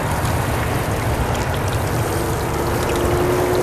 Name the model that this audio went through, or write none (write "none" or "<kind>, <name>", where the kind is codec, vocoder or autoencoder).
none